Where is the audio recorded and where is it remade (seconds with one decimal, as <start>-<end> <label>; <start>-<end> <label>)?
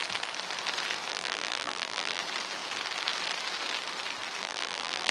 0.0-1.1 recorded; 1.1-2.2 remade; 2.2-4.4 recorded; 4.4-5.1 remade